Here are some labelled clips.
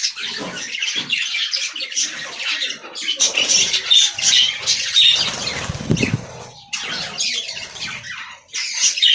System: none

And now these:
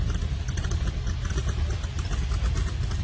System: vocoder, BigVGAN v2